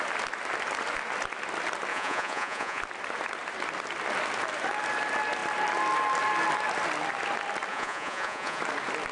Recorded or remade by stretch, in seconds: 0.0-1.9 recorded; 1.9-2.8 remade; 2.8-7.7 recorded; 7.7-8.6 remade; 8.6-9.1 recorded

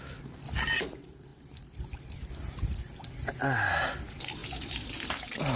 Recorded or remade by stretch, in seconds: 0.0-5.6 recorded

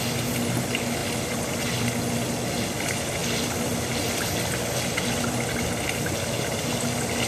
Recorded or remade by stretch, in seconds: 0.0-7.3 recorded

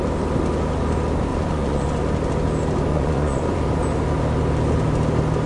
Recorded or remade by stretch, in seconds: 0.0-1.3 recorded; 1.3-2.0 remade; 2.0-2.9 recorded; 2.9-3.6 remade; 3.6-5.5 recorded

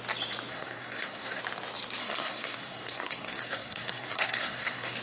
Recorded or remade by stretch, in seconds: 0.0-0.5 recorded; 0.5-1.4 remade; 1.4-2.0 recorded; 2.0-5.0 remade

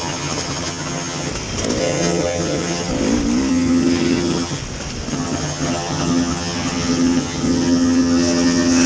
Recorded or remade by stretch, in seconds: 0.0-1.3 remade; 1.3-1.8 recorded; 1.8-2.9 remade; 2.9-3.5 recorded; 3.5-4.6 remade; 4.6-5.1 recorded; 5.1-8.9 remade